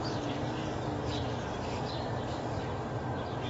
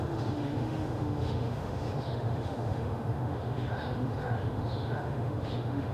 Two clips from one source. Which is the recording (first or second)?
first